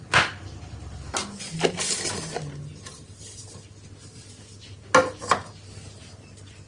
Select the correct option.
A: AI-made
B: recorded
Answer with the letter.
B